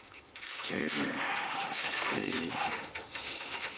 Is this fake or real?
fake